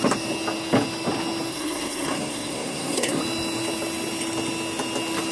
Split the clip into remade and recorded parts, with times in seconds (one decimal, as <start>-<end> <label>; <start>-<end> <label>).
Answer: 0.0-1.5 recorded; 1.5-3.2 remade; 3.2-5.3 recorded

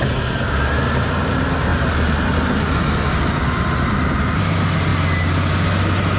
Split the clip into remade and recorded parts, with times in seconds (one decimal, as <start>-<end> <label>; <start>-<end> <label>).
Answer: 0.0-6.2 recorded